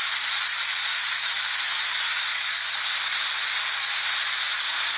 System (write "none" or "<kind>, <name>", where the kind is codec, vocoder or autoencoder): none